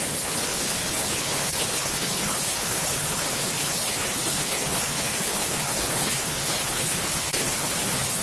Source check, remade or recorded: remade